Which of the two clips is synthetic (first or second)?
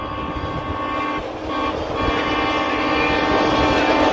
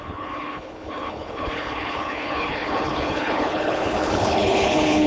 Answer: second